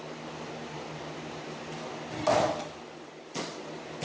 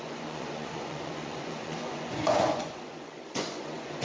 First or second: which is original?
first